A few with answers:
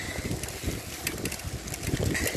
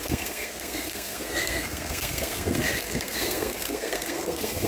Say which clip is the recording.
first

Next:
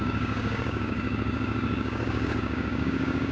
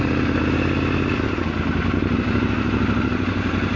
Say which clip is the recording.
second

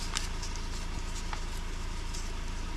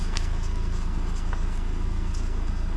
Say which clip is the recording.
first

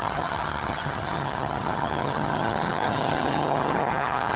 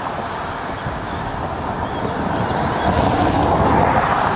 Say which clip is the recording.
second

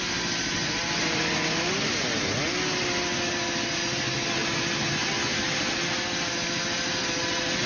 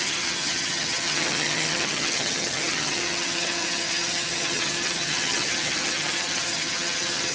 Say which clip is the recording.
first